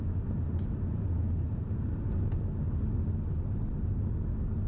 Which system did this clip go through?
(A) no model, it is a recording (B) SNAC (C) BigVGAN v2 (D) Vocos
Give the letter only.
A